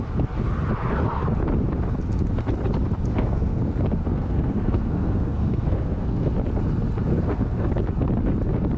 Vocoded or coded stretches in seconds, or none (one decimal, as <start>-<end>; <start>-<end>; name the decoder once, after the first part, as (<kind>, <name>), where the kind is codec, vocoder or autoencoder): 3.1-3.6 (codec, SNAC); 4.0-6.3; 7.1-7.7